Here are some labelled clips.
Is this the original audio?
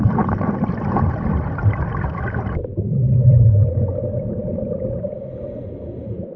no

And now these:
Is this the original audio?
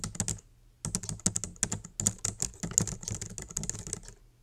yes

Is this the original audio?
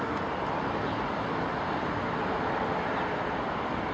yes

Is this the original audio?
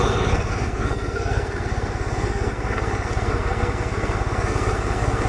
no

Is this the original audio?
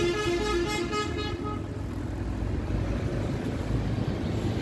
yes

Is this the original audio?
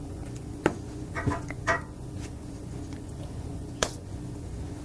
no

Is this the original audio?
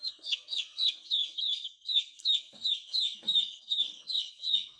no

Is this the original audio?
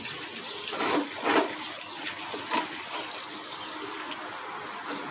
yes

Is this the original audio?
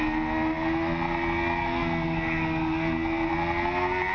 yes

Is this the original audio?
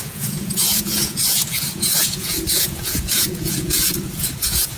no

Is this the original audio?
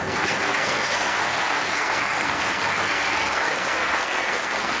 no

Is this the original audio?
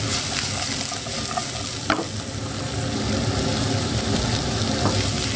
yes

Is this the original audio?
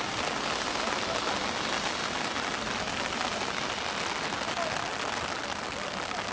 yes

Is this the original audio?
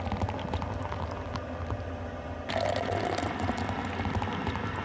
yes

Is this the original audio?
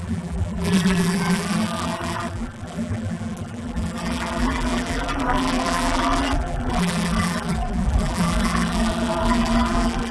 no